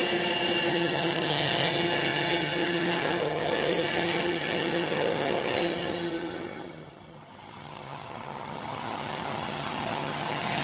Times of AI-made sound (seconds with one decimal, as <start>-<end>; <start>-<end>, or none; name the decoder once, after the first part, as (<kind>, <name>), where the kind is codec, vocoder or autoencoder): 0.7-10.6 (vocoder, HiFi-GAN)